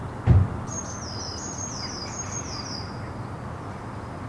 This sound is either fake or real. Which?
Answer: real